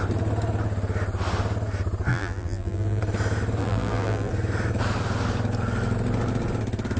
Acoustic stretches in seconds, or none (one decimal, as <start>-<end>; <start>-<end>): 0.0-2.1; 3.0-3.6; 4.3-7.0